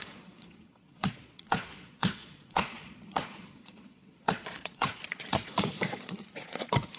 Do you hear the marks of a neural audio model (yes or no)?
yes